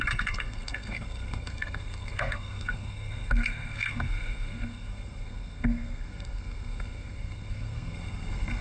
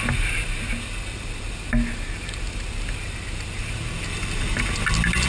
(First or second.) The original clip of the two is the second